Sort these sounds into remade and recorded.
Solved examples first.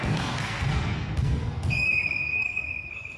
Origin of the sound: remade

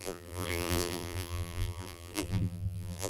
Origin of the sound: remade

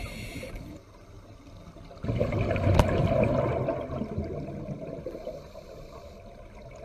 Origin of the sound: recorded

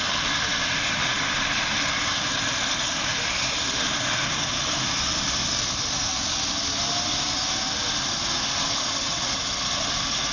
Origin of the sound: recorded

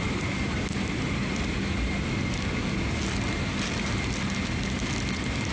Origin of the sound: recorded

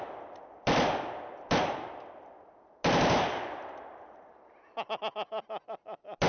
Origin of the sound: recorded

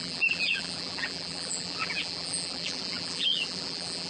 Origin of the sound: remade